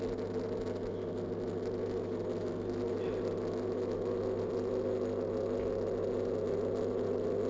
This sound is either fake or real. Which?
real